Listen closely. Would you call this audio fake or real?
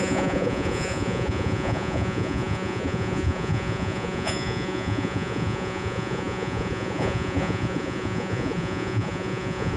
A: fake